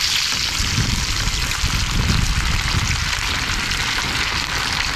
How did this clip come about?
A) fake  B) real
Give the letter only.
B